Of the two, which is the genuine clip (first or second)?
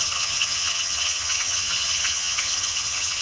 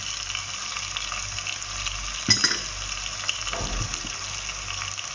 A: second